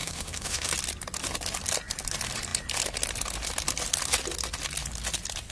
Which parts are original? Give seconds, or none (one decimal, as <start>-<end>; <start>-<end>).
0.7-5.5